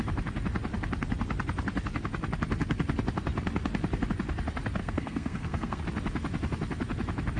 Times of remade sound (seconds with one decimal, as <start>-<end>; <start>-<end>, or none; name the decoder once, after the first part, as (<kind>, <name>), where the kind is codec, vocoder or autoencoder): 4.8-5.8 (codec, SNAC)